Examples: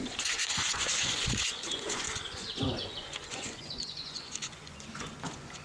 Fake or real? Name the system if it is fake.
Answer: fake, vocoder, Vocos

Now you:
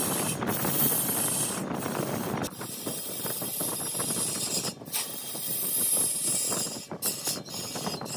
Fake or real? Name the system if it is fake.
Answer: real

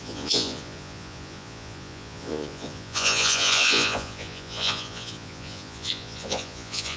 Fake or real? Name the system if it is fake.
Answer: fake, vocoder, Vocos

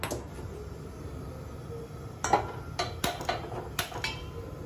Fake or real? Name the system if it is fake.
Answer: real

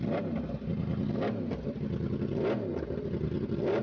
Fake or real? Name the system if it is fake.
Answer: real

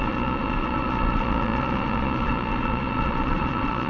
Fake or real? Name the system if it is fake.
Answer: fake, vocoder, Vocos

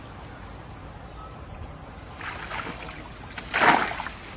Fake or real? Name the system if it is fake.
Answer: real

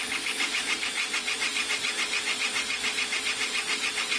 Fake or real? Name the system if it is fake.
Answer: real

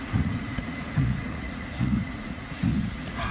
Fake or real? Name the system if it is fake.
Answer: fake, vocoder, Vocos